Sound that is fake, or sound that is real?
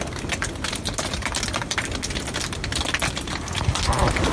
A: real